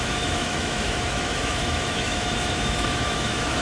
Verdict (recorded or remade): remade